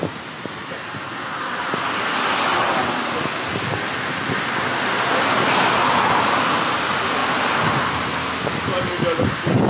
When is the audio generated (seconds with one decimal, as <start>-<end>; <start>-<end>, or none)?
none